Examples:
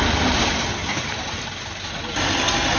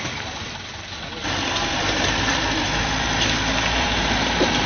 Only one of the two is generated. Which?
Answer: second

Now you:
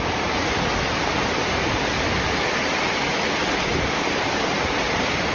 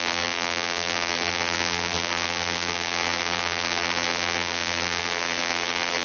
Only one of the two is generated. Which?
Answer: second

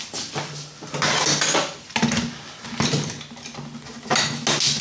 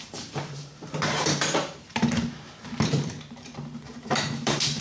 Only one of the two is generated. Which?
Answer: second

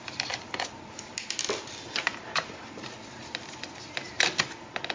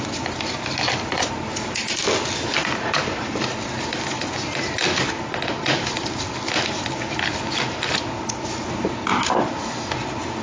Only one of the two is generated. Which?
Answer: first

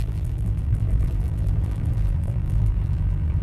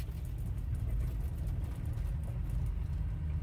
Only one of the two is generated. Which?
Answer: first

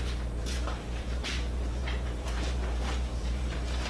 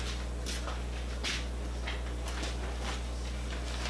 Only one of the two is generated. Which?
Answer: first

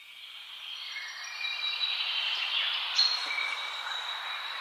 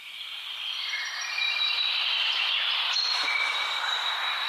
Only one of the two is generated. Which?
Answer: second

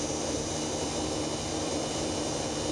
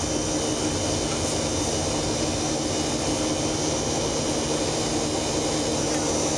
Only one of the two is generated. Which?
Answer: first